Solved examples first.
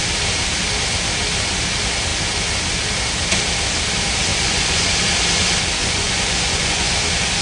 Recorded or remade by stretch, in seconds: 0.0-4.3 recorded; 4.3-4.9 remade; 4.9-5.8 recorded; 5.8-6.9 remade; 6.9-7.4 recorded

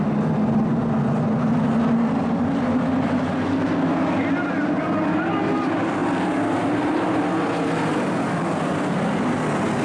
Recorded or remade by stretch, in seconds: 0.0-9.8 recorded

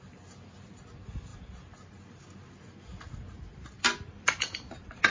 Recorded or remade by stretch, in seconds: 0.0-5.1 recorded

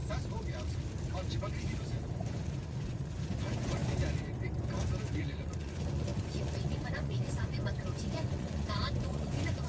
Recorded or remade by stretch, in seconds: 0.0-1.8 recorded; 1.8-3.8 remade; 3.8-5.2 recorded; 5.2-9.7 remade

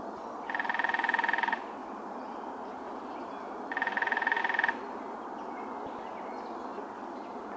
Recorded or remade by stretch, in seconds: 0.0-1.8 recorded; 1.8-4.4 remade; 4.4-7.6 recorded

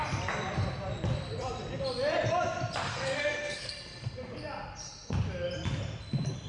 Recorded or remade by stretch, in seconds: 0.0-2.9 recorded; 2.9-3.7 remade; 3.7-6.5 recorded